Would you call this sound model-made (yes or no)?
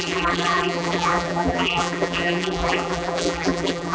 yes